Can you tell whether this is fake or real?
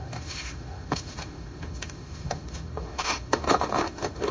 fake